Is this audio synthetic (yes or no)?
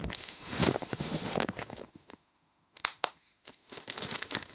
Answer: yes